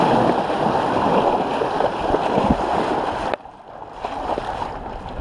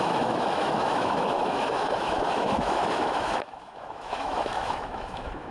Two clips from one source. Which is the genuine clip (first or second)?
first